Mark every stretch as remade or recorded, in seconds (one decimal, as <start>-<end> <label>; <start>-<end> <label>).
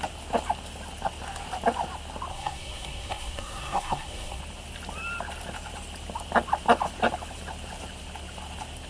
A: 0.0-2.3 recorded; 2.3-4.4 remade; 4.4-8.9 recorded